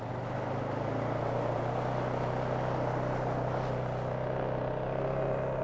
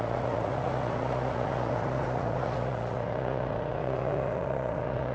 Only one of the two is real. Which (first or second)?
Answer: first